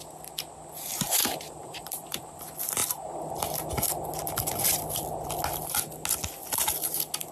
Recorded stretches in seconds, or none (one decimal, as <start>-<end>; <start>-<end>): 0.0-0.9; 2.4-7.3